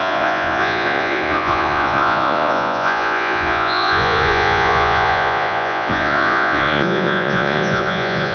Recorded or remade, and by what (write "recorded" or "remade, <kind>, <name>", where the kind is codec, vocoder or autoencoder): remade, vocoder, Vocos